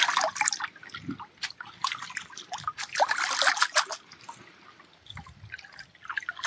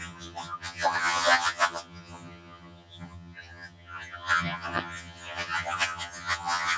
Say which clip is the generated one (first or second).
second